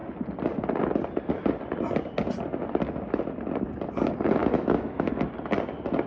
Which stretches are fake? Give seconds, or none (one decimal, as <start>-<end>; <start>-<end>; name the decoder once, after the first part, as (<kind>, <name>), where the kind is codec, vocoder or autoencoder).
4.4-5.1 (autoencoder, DAC-VAE)